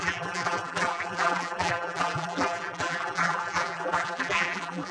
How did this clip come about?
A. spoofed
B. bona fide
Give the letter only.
A